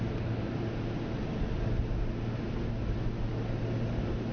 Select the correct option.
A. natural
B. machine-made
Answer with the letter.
A